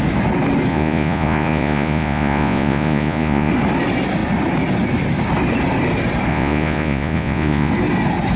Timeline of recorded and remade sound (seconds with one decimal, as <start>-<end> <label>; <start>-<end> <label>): 0.0-0.7 recorded; 0.7-3.5 remade; 3.5-6.3 recorded; 6.3-7.7 remade; 7.7-8.4 recorded